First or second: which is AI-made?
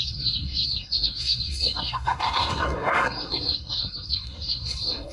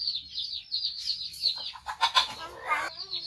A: first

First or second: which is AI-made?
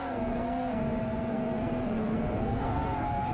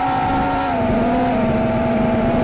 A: first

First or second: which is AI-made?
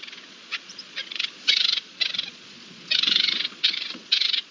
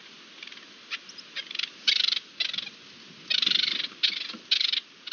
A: first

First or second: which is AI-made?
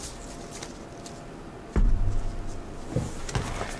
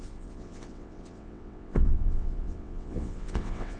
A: second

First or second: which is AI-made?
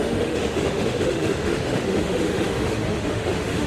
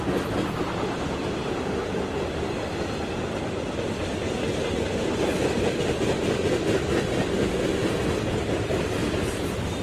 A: first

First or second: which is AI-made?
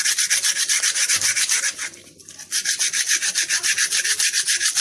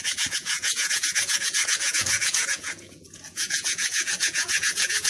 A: second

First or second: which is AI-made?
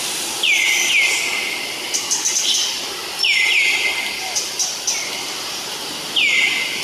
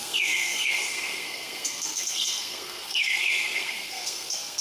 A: second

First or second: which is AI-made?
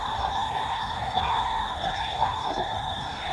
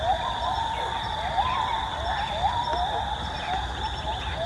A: first